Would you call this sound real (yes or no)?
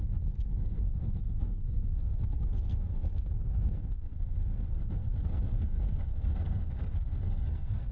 no